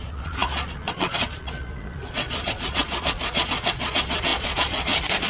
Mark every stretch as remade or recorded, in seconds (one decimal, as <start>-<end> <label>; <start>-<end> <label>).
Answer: 0.0-5.3 remade